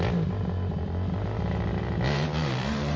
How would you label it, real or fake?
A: fake